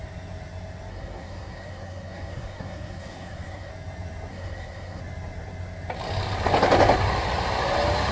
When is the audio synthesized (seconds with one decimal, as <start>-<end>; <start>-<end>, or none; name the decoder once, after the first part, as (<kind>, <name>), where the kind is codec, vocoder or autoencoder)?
0.9-3.7 (codec, SNAC); 4.3-5.0